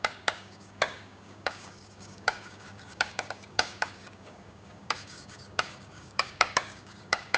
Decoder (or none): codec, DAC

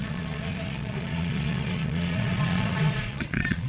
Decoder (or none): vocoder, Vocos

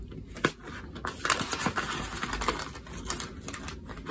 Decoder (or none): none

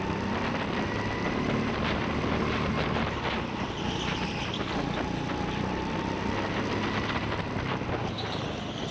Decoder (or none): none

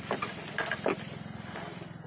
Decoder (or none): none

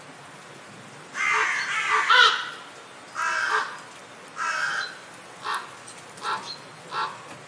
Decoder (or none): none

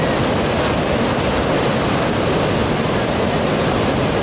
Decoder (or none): none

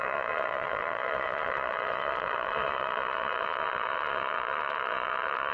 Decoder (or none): vocoder, Vocos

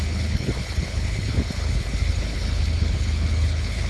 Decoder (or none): codec, HILCodec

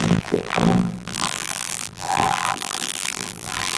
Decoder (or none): vocoder, BigVGAN v2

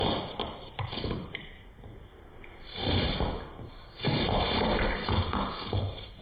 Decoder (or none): vocoder, BigVGAN v2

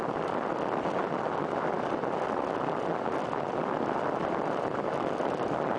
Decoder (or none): none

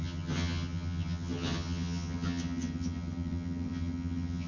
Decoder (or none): vocoder, HiFi-GAN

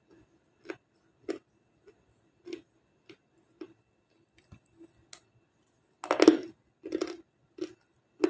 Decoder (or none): none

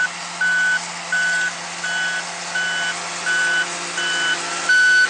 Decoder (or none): none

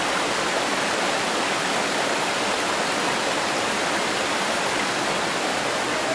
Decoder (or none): vocoder, BigVGAN v2